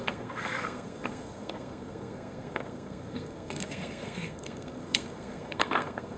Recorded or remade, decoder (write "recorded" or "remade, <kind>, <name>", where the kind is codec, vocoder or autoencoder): remade, codec, SNAC